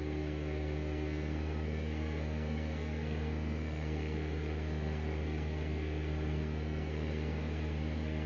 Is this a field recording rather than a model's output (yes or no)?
no